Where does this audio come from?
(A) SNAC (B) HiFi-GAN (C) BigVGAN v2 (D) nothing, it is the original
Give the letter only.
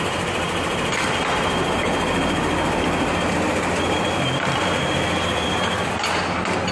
C